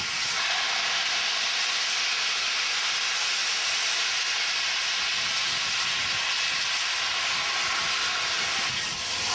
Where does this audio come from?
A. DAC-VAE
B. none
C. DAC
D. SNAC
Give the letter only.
B